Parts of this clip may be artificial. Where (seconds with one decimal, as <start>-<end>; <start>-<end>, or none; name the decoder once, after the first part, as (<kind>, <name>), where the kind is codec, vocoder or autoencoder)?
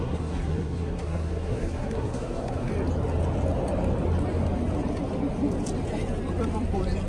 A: 0.0-2.7 (codec, SNAC)